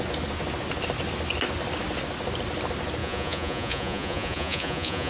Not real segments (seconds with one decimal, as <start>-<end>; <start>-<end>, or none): 3.0-5.1